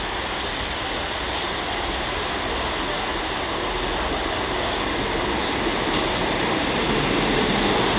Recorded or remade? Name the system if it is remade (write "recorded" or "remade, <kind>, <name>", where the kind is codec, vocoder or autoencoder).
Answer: recorded